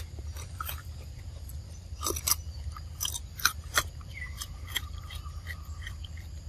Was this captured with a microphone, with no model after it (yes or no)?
no